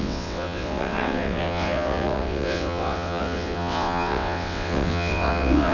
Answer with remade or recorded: remade